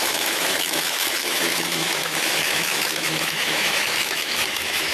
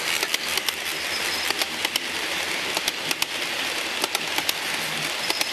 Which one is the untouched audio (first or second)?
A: second